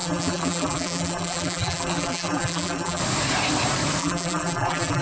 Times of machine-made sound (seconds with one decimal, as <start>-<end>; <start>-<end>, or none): 0.0-3.0; 4.0-5.0